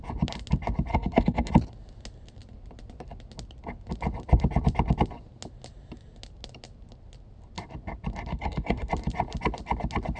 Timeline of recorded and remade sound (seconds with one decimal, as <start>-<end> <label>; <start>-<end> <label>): 0.0-0.9 recorded; 0.9-1.5 remade; 1.5-8.3 recorded; 8.3-8.9 remade; 8.9-10.2 recorded